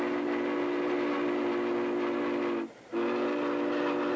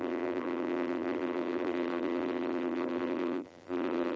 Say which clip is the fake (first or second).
second